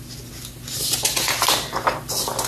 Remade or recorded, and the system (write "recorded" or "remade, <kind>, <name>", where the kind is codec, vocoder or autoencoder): recorded